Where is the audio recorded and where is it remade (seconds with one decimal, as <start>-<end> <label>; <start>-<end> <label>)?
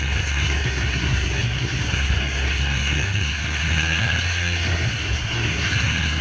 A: 0.0-6.2 remade